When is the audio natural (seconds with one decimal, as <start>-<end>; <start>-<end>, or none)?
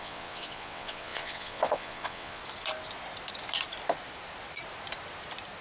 2.4-5.6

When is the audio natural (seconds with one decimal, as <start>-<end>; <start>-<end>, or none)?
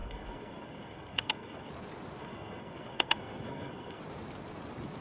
1.7-2.2; 4.0-5.0